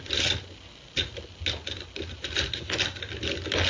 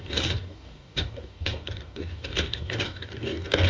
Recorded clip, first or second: first